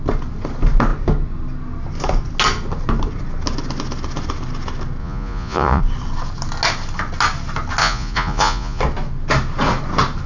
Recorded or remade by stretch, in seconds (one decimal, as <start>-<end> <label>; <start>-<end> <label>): 0.0-5.0 recorded; 5.0-5.8 remade; 5.8-7.8 recorded; 7.8-8.8 remade; 8.8-10.3 recorded